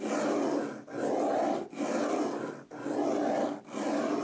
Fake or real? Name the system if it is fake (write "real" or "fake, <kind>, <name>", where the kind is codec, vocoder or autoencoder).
real